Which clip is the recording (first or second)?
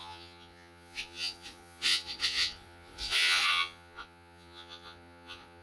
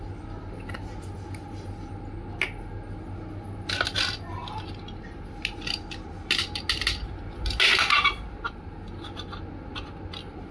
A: second